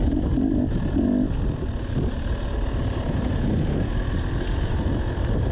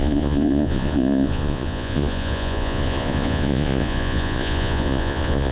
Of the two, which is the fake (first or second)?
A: second